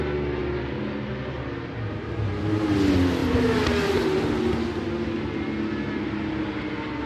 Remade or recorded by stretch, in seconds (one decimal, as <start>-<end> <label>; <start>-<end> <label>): 0.0-7.1 recorded